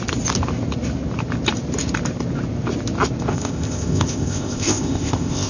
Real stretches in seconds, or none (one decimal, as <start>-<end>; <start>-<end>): 0.0-3.3